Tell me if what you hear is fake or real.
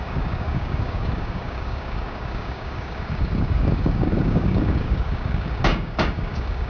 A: fake